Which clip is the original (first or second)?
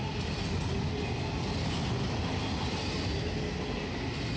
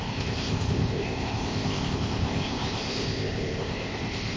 first